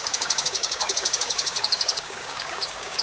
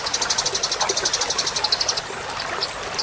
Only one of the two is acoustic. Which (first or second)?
second